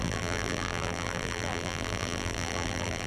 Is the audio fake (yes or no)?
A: yes